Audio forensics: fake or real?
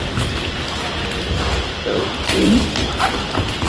real